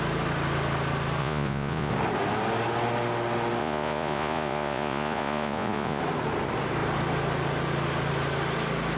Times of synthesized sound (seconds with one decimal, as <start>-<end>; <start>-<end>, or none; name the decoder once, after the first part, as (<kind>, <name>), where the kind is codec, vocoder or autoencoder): 1.2-1.9 (vocoder, Vocos); 3.6-6.0